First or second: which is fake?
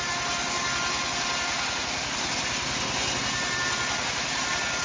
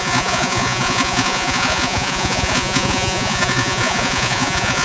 second